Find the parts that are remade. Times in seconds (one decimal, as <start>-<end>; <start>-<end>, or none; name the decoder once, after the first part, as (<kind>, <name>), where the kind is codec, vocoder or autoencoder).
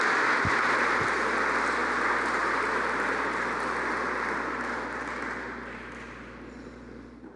0.0-7.4 (vocoder, BigVGAN v2)